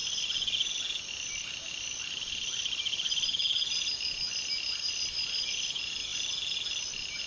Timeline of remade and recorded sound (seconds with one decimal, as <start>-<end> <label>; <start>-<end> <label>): 0.0-7.3 recorded